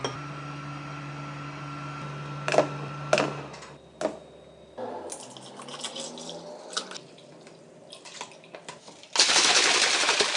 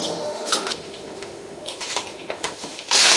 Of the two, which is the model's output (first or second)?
second